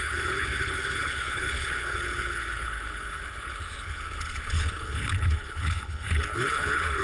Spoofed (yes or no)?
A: yes